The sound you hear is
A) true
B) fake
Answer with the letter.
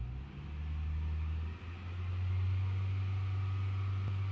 A